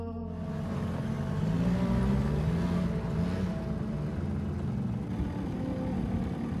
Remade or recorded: recorded